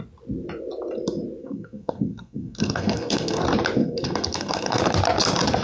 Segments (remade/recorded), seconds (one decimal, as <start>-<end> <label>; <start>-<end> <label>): 0.0-1.4 recorded; 1.4-3.4 remade; 3.4-3.8 recorded; 3.8-4.8 remade; 4.8-5.6 recorded